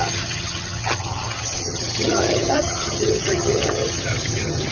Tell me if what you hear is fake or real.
fake